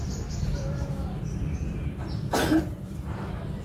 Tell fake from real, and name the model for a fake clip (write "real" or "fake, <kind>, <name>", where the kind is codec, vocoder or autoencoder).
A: fake, vocoder, BigVGAN v2